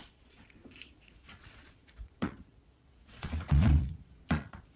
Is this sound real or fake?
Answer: fake